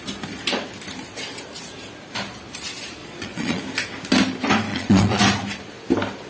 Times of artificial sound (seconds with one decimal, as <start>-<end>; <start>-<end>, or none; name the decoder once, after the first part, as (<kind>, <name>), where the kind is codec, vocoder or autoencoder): 3.0-3.6 (vocoder, Vocos); 4.7-5.2